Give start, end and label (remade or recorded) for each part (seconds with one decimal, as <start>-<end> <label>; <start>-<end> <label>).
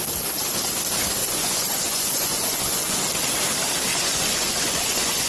0.0-1.2 recorded; 1.2-3.0 remade; 3.0-3.9 recorded; 3.9-5.3 remade